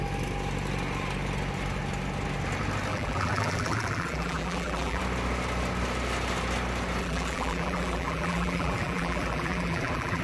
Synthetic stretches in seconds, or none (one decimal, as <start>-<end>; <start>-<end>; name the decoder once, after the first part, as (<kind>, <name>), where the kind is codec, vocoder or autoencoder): 2.9-5.0 (vocoder, BigVGAN v2); 7.0-10.2